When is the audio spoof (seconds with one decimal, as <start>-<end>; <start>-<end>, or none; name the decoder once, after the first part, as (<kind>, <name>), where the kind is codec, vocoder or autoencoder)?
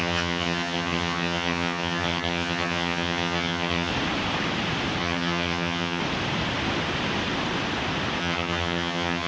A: 0.0-3.9 (vocoder, HiFi-GAN); 5.0-6.0; 8.2-9.3